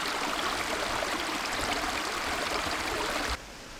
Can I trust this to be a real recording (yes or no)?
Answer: yes